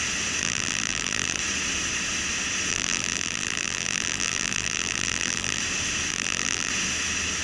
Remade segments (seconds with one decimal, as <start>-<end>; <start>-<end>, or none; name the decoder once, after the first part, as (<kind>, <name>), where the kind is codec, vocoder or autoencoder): 0.4-1.4 (vocoder, BigVGAN v2); 2.7-5.6; 6.1-6.7